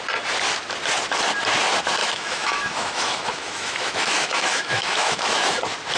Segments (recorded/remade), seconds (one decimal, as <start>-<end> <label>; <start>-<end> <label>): 0.0-2.0 recorded; 2.0-5.6 remade; 5.6-6.0 recorded